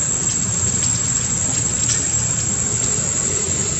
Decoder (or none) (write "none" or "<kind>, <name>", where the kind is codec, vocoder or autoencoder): none